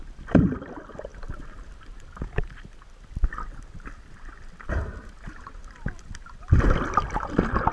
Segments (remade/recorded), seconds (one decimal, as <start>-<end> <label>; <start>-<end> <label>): 0.0-7.7 recorded